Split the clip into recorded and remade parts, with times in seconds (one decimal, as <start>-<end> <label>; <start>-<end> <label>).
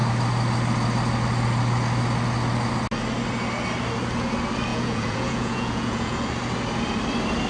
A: 0.0-4.7 recorded; 4.7-6.3 remade; 6.3-7.5 recorded